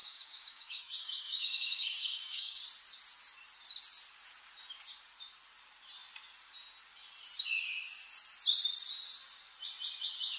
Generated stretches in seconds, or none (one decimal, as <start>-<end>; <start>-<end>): 0.0-2.6